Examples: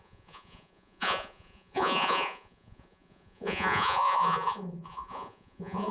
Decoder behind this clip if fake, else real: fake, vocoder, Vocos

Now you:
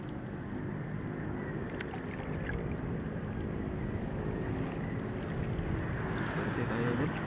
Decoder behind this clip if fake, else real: real